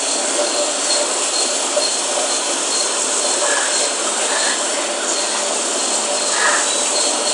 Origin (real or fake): real